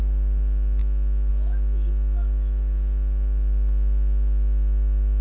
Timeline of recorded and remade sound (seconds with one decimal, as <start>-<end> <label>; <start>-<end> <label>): 0.0-5.2 recorded